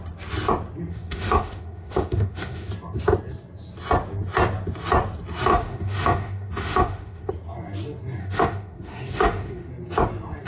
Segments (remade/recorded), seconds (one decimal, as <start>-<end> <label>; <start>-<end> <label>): 0.0-0.9 recorded; 0.9-2.7 remade; 2.7-5.5 recorded; 5.5-7.3 remade; 7.3-8.2 recorded; 8.2-9.7 remade; 9.7-10.5 recorded